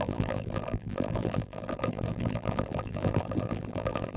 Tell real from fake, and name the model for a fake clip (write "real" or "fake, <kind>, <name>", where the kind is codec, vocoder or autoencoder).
fake, vocoder, BigVGAN v2